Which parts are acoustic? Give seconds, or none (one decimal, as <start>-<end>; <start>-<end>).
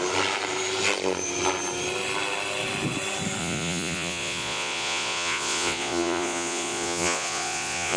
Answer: 0.0-3.4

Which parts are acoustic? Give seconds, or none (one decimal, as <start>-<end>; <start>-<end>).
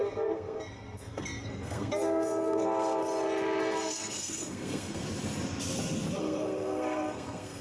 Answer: 3.0-3.6; 5.0-6.2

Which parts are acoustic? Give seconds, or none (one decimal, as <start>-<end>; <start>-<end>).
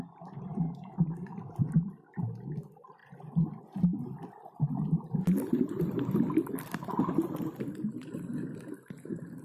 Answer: 0.0-9.4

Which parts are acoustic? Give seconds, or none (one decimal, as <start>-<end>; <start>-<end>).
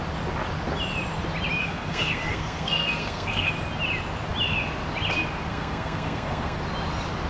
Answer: 0.0-1.6; 3.5-5.5; 6.6-7.3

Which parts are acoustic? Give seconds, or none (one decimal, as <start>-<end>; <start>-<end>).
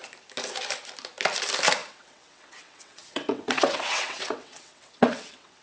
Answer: 0.0-1.8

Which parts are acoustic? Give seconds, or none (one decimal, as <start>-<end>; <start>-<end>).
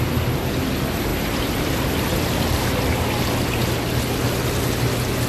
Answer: 0.0-5.3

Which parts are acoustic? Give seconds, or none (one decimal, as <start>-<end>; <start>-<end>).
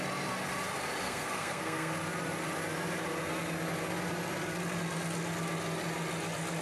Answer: 0.0-1.0; 1.9-6.6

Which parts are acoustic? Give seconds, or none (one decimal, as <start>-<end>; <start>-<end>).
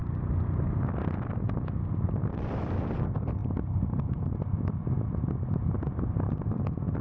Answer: 0.0-7.0